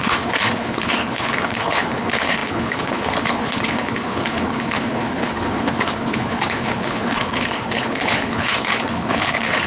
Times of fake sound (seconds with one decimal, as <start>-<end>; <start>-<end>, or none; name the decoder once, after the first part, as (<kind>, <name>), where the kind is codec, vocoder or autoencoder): 0.0-9.7 (codec, HILCodec)